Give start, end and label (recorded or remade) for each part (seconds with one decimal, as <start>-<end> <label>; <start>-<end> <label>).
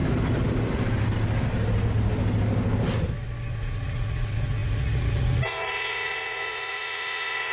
0.0-3.5 recorded; 3.5-7.5 remade